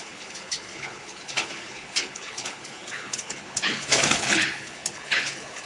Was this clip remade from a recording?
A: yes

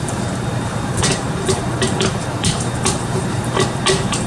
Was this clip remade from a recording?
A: yes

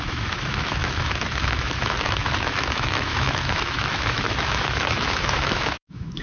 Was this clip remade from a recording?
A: yes